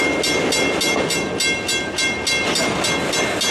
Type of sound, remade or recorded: recorded